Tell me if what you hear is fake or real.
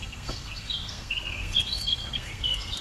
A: fake